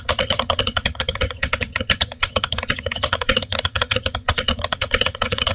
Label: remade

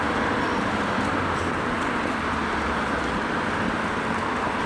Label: remade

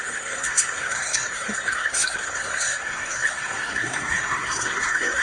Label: remade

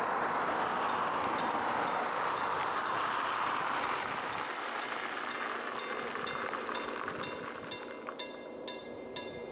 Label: recorded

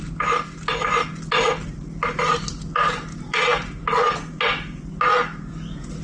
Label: recorded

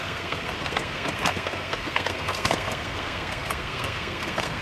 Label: remade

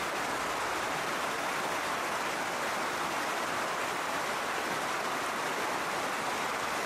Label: recorded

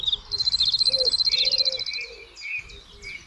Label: recorded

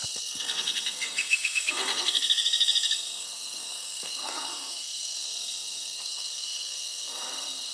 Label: remade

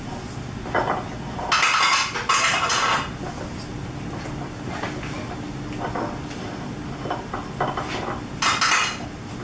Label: recorded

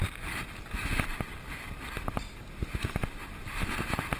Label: recorded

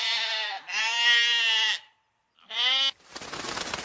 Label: recorded